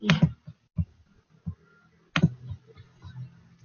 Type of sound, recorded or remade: recorded